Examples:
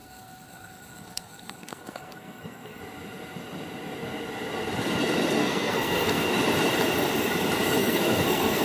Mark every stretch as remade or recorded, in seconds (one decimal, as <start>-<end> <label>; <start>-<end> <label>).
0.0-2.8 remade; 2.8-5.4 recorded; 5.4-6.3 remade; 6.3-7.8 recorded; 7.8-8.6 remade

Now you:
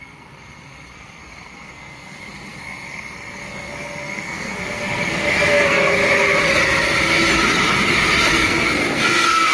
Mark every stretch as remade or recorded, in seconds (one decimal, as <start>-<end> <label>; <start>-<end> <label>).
0.0-6.0 remade; 6.0-8.3 recorded; 8.3-9.5 remade

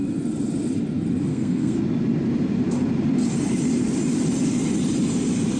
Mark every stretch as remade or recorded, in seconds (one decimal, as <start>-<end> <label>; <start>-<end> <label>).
0.0-1.3 recorded; 1.3-1.8 remade; 1.8-5.6 recorded

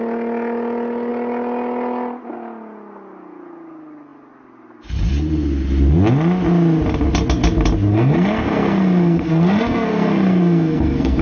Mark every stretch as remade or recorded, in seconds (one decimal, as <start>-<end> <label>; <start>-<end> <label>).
0.0-7.9 recorded; 7.9-11.2 remade

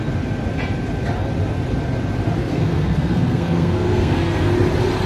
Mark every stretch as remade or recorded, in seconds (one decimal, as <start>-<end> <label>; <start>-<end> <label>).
0.0-2.4 recorded; 2.4-4.5 remade; 4.5-5.1 recorded